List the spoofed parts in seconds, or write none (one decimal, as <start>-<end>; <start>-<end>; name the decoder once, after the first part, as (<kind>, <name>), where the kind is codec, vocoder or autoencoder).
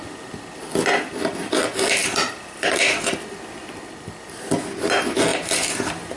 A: 2.0-4.3 (vocoder, BigVGAN v2); 5.3-6.2